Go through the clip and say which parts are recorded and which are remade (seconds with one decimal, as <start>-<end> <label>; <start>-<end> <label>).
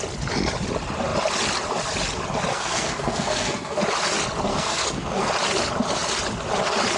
0.0-2.5 recorded; 2.5-3.8 remade; 3.8-4.5 recorded; 4.5-5.3 remade; 5.3-7.0 recorded